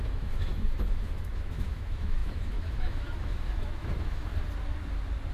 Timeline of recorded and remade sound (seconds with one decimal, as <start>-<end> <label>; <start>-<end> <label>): 0.0-4.3 remade; 4.3-5.3 recorded